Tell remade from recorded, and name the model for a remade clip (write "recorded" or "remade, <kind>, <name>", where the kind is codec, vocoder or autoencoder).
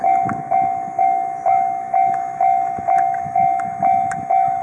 remade, autoencoder, DAC-VAE